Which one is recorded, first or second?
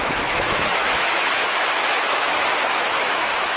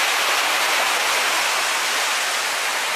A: second